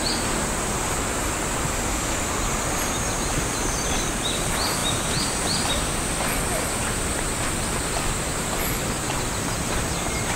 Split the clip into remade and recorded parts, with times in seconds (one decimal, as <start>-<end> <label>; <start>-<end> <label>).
0.0-10.4 recorded